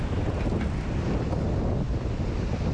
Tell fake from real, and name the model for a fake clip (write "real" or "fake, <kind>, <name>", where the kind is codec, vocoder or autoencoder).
real